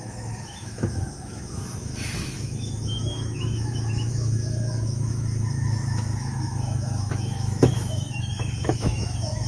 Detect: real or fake fake